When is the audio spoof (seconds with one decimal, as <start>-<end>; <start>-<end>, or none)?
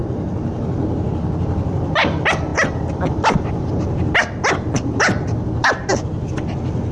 none